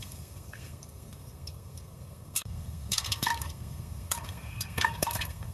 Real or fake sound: fake